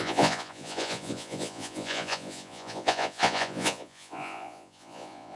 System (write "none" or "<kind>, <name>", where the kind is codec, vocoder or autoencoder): vocoder, Vocos